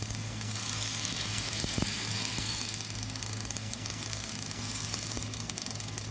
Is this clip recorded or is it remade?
remade